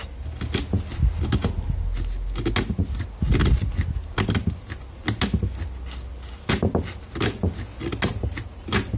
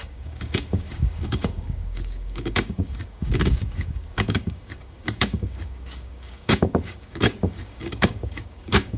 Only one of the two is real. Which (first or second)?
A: first